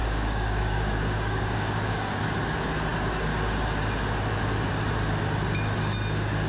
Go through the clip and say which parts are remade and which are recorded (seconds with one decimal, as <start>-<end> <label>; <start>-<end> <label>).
0.0-2.2 remade; 2.2-6.5 recorded